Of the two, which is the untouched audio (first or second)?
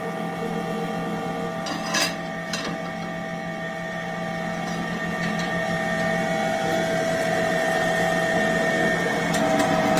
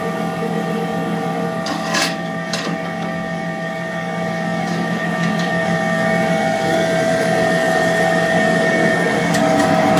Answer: first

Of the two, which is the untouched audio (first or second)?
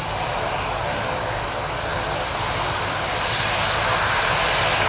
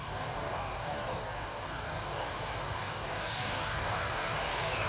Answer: first